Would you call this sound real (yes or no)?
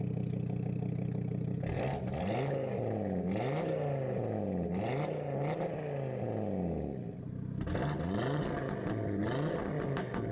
yes